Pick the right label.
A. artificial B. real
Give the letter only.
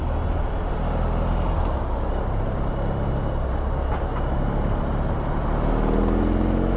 B